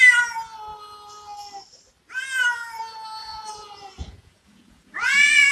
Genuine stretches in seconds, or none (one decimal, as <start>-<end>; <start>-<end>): 0.0-3.2